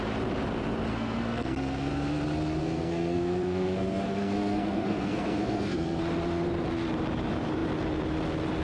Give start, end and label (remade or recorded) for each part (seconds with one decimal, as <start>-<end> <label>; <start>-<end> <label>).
0.0-0.9 recorded; 0.9-1.9 remade; 1.9-2.6 recorded; 2.6-6.0 remade; 6.0-8.6 recorded